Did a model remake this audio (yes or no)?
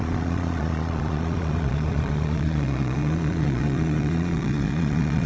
yes